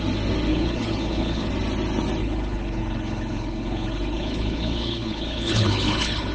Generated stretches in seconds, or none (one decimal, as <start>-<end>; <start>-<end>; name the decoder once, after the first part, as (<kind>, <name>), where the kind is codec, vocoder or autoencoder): 0.5-1.5 (codec, HILCodec); 2.2-6.3